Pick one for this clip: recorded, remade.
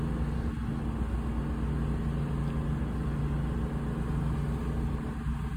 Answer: recorded